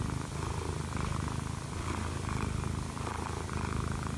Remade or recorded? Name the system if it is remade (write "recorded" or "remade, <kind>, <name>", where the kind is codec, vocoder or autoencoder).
recorded